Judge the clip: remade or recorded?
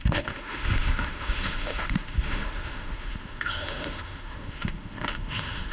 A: remade